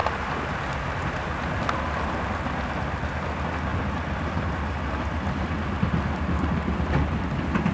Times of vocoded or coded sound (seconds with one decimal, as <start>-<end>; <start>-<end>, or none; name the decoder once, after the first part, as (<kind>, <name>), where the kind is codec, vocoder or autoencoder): none

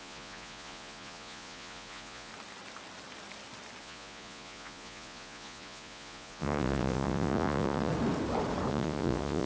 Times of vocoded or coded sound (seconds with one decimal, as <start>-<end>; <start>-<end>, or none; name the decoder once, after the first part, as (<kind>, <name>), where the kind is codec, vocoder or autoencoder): 0.0-2.3 (vocoder, Vocos); 3.8-7.9; 8.7-9.5

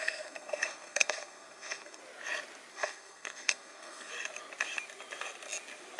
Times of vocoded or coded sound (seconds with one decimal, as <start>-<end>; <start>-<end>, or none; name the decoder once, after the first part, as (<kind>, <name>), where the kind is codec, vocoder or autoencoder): 0.0-2.0 (codec, SNAC); 2.7-4.1